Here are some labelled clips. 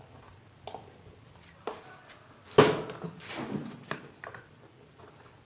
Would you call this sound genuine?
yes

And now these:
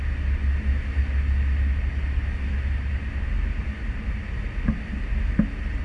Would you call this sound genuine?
yes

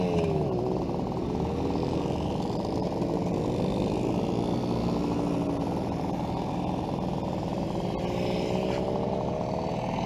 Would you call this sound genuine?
yes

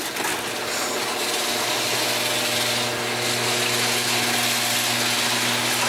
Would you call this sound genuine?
yes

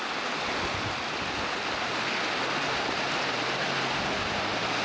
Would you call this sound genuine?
yes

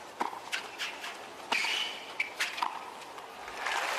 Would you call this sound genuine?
yes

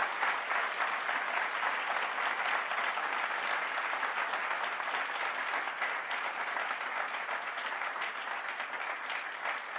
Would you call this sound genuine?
yes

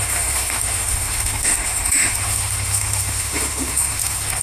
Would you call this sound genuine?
no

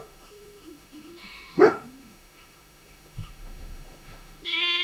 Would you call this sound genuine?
no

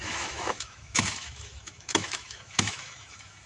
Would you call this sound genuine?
no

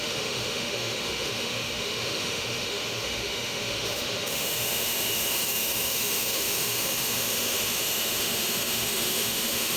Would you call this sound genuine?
no